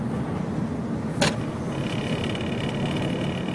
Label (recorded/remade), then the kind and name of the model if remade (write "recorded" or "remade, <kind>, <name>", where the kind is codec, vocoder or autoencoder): recorded